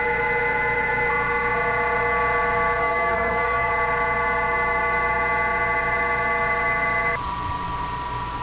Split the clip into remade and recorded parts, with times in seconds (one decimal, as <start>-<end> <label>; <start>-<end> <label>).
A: 0.0-2.8 recorded; 2.8-3.7 remade; 3.7-8.4 recorded